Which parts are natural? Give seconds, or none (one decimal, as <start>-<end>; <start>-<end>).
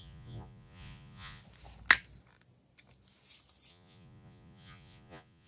1.4-3.7